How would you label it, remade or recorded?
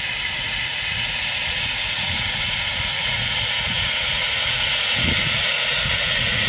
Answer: remade